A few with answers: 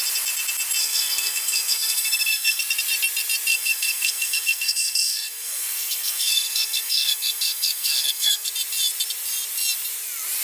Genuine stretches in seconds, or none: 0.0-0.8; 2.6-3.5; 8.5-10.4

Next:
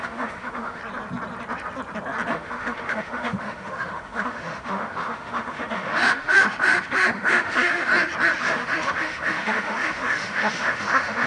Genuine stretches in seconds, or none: 0.8-2.3; 7.9-8.4

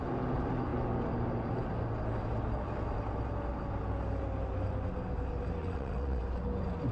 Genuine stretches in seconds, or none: 0.0-5.6; 6.2-6.9